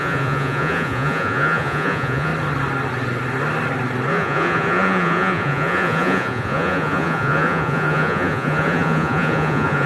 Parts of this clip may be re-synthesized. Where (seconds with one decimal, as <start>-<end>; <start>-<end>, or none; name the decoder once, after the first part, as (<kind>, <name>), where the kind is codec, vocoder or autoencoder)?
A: 0.0-2.3 (vocoder, Vocos); 4.1-9.9